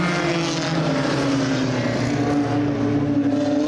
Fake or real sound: real